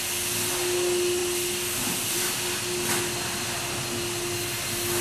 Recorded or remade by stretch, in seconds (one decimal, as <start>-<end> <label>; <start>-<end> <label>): 0.0-5.0 recorded